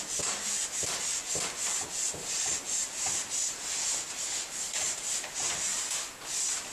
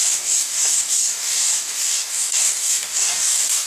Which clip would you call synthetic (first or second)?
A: second